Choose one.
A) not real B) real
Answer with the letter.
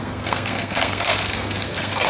A